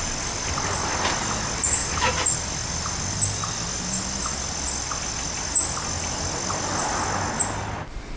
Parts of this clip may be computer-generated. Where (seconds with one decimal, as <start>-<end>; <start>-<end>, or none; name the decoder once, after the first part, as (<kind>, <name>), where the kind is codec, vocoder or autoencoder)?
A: none

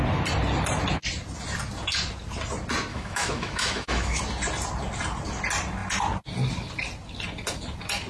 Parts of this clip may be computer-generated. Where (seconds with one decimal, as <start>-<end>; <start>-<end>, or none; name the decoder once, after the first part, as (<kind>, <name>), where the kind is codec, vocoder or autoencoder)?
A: 2.9-4.2 (autoencoder, DAC-VAE)

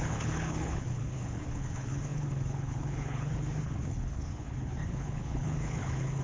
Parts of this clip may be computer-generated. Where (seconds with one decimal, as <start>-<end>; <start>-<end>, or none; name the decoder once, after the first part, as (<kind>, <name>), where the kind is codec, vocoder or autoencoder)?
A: 0.0-6.2 (codec, HILCodec)